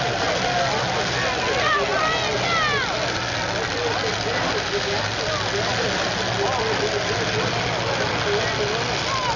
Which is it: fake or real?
real